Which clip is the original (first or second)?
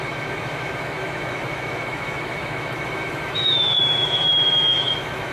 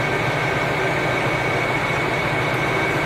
second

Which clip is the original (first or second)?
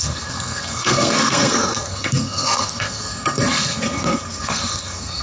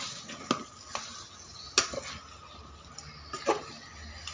second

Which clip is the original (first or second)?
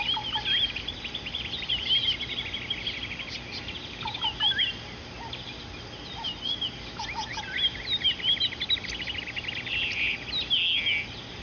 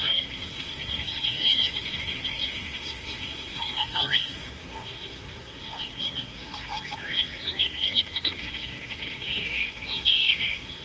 first